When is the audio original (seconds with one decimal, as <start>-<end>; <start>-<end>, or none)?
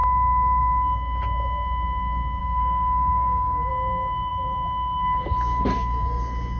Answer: 0.0-2.4; 3.7-6.6